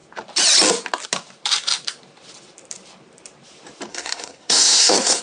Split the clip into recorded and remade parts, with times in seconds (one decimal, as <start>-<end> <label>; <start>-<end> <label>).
0.0-3.9 recorded; 3.9-5.2 remade